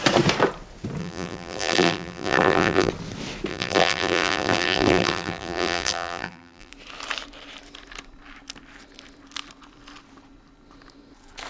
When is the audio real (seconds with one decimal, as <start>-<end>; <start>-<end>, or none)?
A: 0.0-1.0; 2.9-3.5; 6.7-11.5